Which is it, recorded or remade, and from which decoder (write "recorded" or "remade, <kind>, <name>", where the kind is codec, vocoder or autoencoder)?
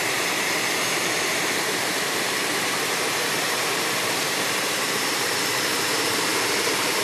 remade, vocoder, BigVGAN v2